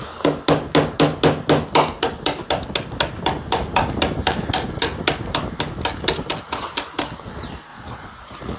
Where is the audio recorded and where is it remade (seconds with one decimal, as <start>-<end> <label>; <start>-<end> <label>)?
0.0-7.7 recorded; 7.7-8.6 remade